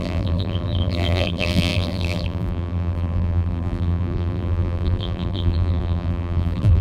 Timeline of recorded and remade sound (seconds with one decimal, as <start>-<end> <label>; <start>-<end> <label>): 0.0-6.8 remade